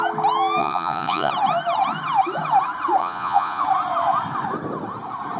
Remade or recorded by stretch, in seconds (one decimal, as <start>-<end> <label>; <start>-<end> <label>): 0.0-0.6 recorded; 0.6-1.3 remade; 1.3-3.0 recorded; 3.0-3.6 remade; 3.6-5.4 recorded